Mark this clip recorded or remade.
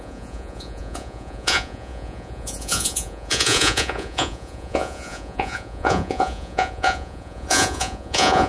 remade